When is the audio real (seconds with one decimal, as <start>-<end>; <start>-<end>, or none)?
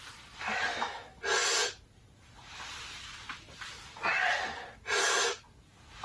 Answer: 0.0-0.7; 1.2-6.0